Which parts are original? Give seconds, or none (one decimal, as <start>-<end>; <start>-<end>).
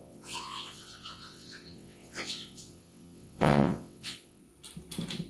4.4-5.3